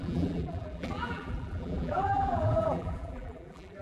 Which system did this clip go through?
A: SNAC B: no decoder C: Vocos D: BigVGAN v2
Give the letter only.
D